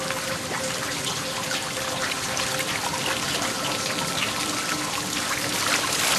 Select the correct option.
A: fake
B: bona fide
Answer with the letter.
A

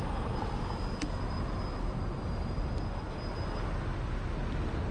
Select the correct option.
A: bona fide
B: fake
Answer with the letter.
A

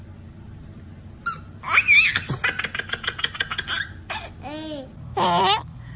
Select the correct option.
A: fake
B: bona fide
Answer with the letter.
B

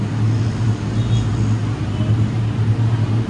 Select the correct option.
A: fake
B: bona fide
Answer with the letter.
B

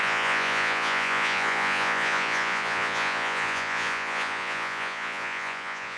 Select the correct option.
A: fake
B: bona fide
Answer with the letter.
A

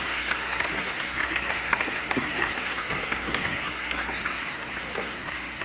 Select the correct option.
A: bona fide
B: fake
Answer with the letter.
B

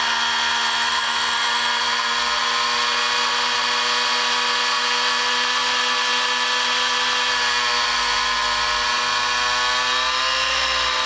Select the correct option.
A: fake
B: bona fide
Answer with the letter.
B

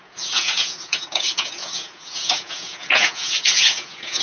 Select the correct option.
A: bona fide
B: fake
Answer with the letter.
B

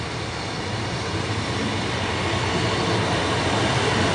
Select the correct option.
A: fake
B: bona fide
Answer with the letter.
B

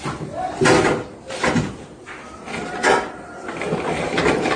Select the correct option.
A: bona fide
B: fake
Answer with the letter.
A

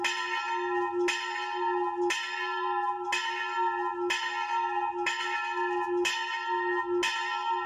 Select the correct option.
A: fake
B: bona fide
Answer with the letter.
B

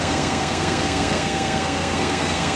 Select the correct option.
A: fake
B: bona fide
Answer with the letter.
A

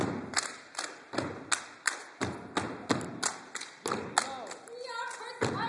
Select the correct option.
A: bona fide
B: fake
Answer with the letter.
A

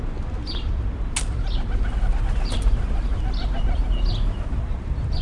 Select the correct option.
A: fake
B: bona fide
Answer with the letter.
B